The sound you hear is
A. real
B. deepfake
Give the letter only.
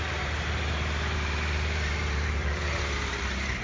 B